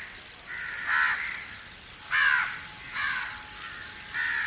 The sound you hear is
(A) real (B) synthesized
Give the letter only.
A